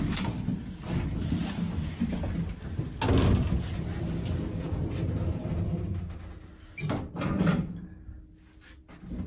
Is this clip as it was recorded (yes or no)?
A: yes